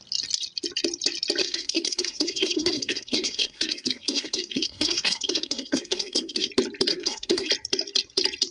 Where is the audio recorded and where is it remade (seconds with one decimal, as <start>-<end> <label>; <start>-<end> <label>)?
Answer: 0.0-1.4 recorded; 1.4-6.5 remade; 6.5-6.9 recorded; 6.9-7.5 remade; 7.5-8.5 recorded